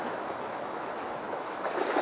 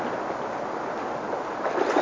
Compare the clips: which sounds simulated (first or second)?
first